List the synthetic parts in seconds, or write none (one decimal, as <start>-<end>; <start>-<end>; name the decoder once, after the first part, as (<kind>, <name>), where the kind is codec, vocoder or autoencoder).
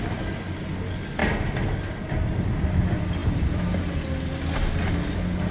3.2-3.7 (vocoder, BigVGAN v2)